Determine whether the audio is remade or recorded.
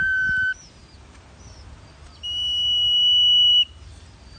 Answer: recorded